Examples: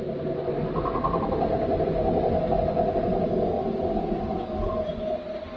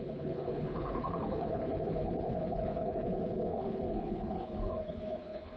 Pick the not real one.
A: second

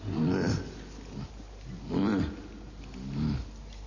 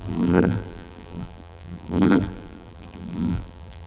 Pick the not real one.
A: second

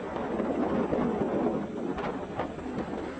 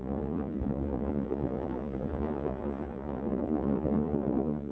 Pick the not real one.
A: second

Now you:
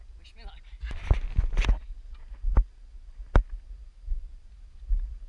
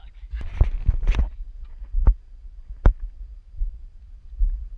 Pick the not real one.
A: second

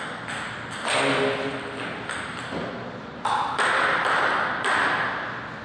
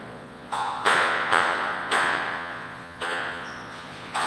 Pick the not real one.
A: second